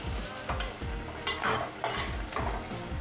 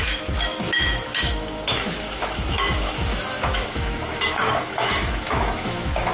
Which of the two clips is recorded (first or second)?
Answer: first